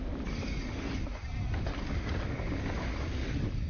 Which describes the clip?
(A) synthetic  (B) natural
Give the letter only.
B